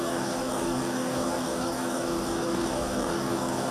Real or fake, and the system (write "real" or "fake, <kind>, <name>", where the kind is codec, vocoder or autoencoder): fake, codec, DAC